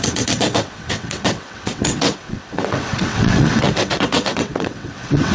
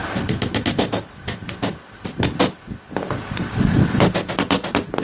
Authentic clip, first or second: second